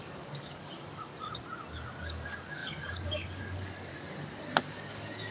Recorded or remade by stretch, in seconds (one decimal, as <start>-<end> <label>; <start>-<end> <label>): 0.0-1.1 remade; 1.1-2.0 recorded; 2.0-3.9 remade; 3.9-4.6 recorded; 4.6-5.3 remade